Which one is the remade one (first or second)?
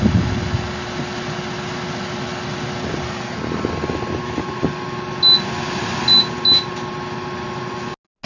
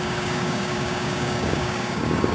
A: second